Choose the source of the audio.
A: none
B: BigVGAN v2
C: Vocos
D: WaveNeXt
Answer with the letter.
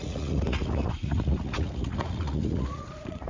C